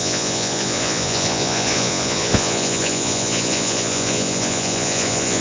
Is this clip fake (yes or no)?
yes